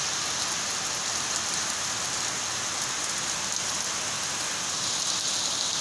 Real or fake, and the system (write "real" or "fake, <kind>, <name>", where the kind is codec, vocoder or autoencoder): real